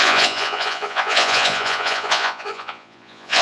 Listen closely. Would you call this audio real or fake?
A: fake